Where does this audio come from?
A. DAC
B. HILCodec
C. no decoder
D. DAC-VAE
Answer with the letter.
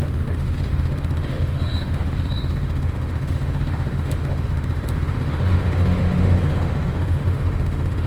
D